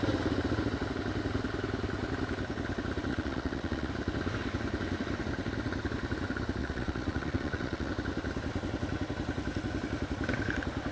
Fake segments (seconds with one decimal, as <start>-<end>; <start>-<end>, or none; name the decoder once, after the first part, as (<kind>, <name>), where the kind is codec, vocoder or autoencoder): 3.1-3.9 (vocoder, Vocos); 6.6-7.9